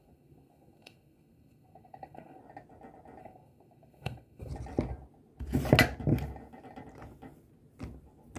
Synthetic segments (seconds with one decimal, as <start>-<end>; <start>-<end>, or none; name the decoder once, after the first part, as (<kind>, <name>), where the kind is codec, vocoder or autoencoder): 0.0-2.4 (codec, SNAC); 3.2-4.5